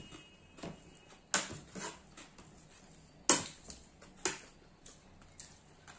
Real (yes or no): yes